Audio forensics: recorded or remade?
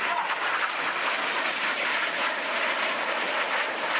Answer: recorded